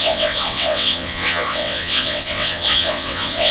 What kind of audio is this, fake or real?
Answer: fake